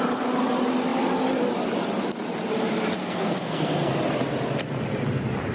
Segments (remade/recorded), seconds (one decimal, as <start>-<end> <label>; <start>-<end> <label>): 0.0-3.0 recorded; 3.0-3.9 remade; 3.9-5.5 recorded